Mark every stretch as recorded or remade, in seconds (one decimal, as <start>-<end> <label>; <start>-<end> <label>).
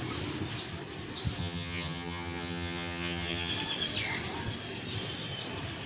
0.0-1.4 recorded; 1.4-3.5 remade; 3.5-5.9 recorded